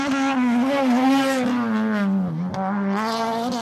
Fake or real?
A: real